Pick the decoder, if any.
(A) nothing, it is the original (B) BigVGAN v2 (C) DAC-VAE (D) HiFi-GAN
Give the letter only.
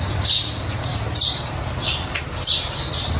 A